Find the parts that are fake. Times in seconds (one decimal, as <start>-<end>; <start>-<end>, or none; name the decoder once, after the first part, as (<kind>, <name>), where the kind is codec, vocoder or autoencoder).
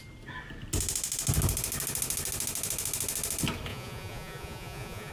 3.7-5.1 (vocoder, Vocos)